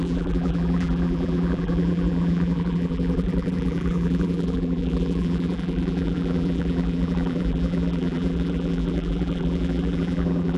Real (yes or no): no